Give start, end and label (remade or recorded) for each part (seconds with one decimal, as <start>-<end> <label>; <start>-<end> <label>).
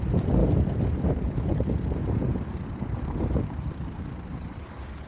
0.0-0.4 recorded; 0.4-1.6 remade; 1.6-5.1 recorded